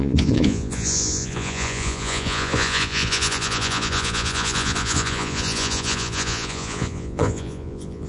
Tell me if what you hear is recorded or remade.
remade